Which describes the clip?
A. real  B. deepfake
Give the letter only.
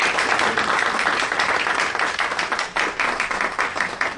A